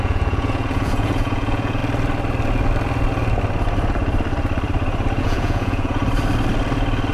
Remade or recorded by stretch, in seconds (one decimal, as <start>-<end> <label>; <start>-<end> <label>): 0.0-1.8 remade; 1.8-5.2 recorded; 5.2-6.0 remade; 6.0-7.1 recorded